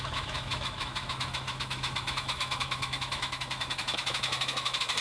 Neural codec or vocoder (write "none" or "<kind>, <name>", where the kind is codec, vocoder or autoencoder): autoencoder, DAC-VAE